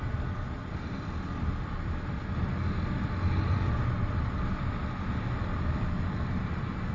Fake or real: real